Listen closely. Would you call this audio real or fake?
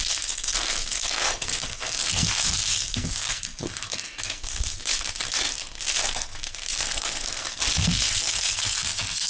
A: fake